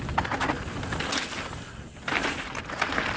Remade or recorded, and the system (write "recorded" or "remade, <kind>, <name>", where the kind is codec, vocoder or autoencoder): recorded